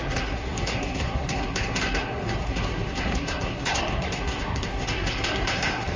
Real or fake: fake